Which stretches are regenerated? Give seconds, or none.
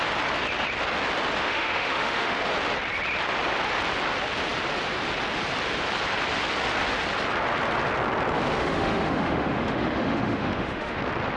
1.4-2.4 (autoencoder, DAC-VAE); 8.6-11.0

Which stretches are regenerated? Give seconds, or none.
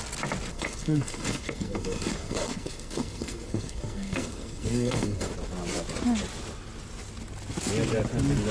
0.5-5.3 (codec, SNAC)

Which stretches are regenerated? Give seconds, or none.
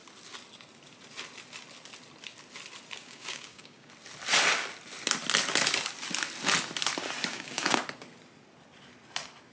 3.0-3.9 (codec, DAC); 7.3-7.8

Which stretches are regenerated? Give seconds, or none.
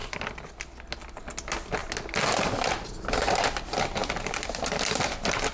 none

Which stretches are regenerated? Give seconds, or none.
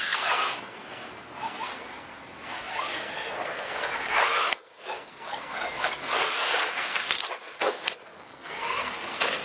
0.0-9.4 (codec, SNAC)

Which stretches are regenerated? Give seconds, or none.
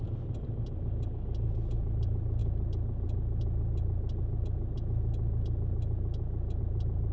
none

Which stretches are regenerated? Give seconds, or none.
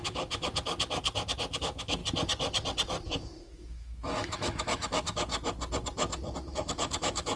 0.0-0.5 (autoencoder, DAC-VAE); 1.6-2.0; 3.1-5.3; 6.5-7.4